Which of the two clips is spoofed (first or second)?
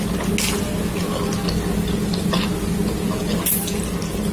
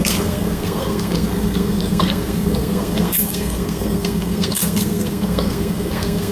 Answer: second